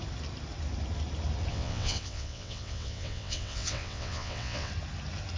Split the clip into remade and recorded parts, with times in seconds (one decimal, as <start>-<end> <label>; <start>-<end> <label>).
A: 0.0-1.5 recorded; 1.5-4.7 remade; 4.7-5.4 recorded